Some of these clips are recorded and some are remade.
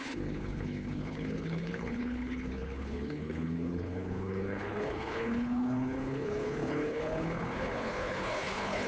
remade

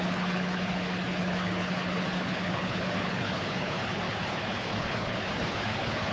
remade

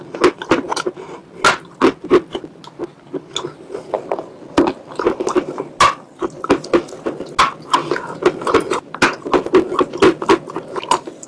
recorded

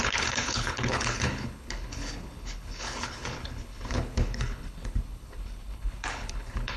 remade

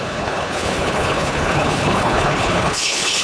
remade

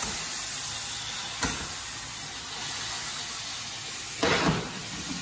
recorded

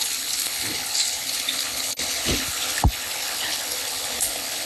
remade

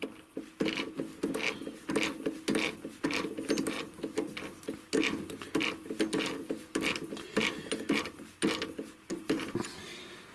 recorded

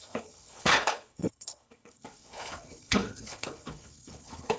remade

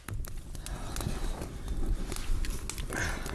recorded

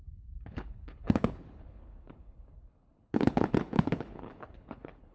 remade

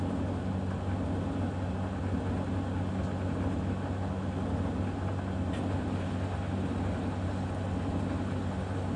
recorded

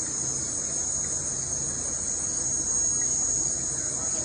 recorded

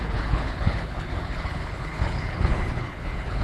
remade